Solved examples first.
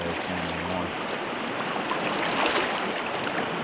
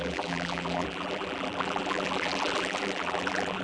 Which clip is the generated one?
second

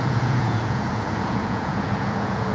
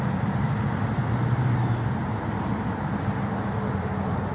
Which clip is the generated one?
first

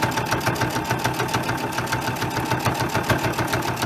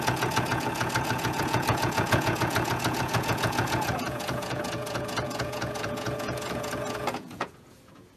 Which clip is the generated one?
second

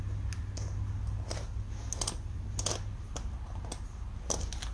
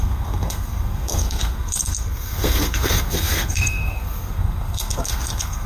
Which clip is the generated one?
second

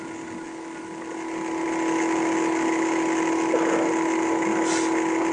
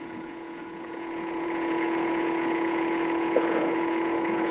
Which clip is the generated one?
second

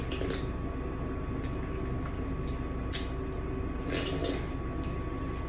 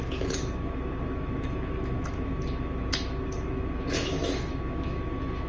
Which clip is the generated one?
second